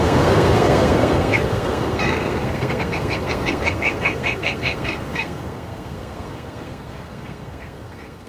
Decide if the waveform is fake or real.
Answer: fake